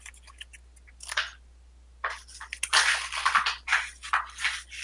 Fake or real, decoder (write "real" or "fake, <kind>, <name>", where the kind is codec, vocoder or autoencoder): real